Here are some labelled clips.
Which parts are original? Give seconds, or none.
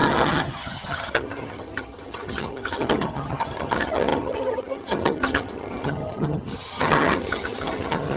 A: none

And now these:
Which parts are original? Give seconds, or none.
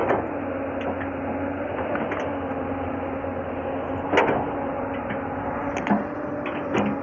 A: 0.0-7.0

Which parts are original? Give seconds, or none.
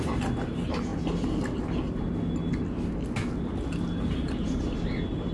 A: 0.0-5.3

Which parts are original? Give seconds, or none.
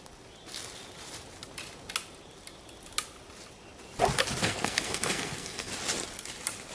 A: 0.0-4.4; 5.7-6.7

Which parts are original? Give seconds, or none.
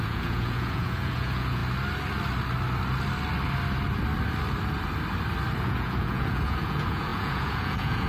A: 1.6-5.6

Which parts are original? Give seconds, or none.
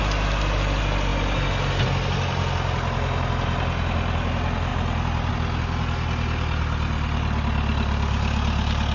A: 0.0-8.9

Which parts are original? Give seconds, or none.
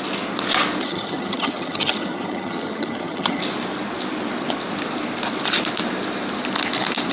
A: 0.0-0.8; 3.4-7.1